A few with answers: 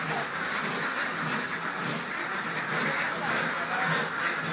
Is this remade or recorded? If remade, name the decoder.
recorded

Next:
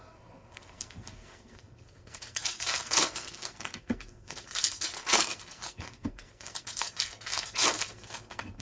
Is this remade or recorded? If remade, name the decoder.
remade, codec, SNAC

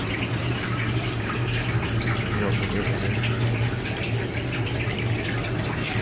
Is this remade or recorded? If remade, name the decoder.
recorded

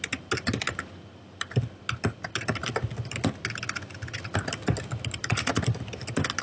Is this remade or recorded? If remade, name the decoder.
recorded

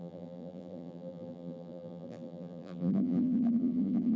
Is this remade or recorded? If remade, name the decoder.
remade, vocoder, BigVGAN v2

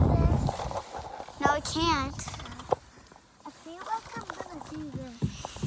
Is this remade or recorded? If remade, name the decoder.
recorded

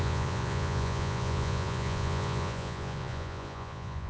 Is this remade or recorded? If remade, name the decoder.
remade, vocoder, Vocos